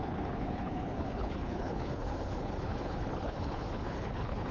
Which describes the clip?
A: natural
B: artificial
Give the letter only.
B